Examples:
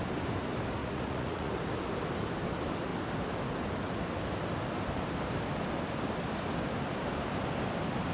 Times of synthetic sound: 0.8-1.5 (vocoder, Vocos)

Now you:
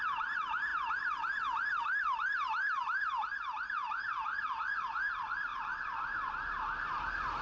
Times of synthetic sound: 0.0-7.4 (vocoder, BigVGAN v2)

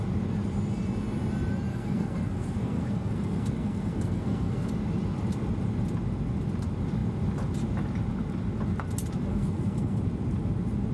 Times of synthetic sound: 1.7-4.7 (codec, SNAC); 9.3-10.0